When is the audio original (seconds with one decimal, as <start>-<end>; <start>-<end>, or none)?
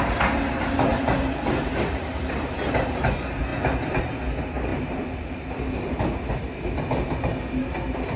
0.0-8.2